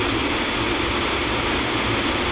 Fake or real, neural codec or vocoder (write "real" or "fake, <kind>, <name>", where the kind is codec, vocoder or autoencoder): real